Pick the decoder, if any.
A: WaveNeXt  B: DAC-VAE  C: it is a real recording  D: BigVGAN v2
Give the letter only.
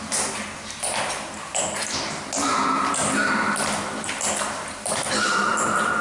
C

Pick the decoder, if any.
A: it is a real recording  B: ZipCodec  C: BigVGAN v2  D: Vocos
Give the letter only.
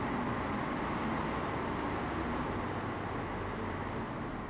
A